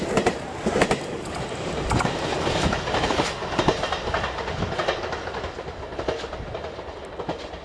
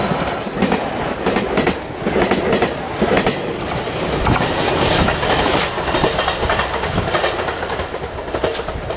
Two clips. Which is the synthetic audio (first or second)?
first